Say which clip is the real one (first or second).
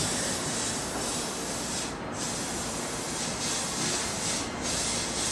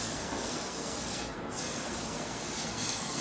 first